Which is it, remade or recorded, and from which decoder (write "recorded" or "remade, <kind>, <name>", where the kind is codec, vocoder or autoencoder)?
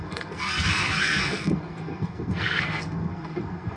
remade, codec, SNAC